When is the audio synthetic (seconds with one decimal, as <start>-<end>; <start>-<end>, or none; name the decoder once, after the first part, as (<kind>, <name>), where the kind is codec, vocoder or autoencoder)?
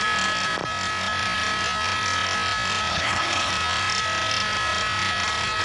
2.9-3.5 (codec, HILCodec)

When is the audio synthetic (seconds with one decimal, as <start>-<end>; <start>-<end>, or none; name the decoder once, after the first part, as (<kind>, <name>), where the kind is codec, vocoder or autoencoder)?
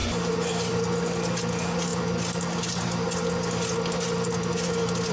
none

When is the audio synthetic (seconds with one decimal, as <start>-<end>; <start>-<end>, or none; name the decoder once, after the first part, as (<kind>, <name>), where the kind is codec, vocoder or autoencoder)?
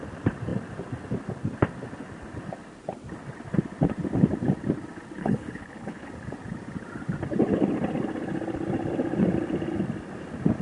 5.2-6.1 (codec, HILCodec)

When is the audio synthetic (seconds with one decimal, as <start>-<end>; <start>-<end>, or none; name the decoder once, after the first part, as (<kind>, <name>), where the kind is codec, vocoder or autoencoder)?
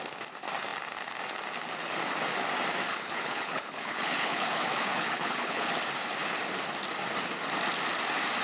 2.9-5.7 (codec, HILCodec)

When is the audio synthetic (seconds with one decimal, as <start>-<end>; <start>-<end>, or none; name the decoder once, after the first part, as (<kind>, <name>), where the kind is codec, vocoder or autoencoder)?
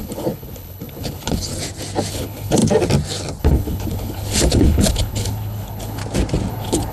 0.0-1.5 (codec, HILCodec); 2.1-2.6; 3.4-6.0; 6.5-6.9